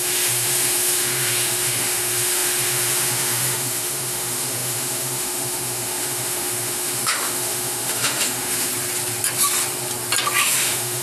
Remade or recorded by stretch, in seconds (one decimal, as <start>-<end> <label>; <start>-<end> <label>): 0.0-8.7 remade; 8.7-10.4 recorded; 10.4-11.0 remade